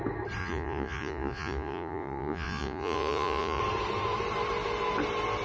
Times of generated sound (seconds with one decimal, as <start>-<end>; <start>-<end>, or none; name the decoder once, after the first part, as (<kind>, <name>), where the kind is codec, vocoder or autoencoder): 0.4-3.6 (vocoder, Vocos)